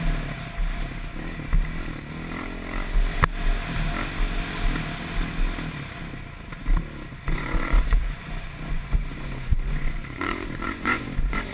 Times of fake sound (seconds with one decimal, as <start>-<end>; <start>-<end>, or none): 7.1-11.5